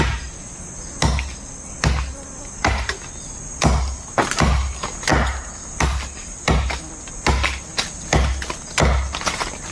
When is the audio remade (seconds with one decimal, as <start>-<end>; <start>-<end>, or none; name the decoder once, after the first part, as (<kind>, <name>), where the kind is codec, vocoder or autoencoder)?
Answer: none